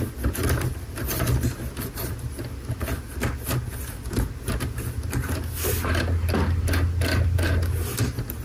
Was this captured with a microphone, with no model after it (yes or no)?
yes